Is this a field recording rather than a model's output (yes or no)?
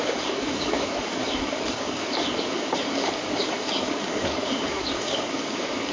no